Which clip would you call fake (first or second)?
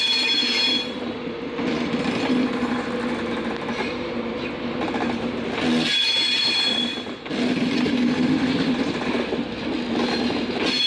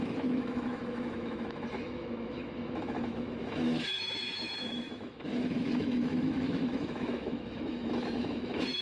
second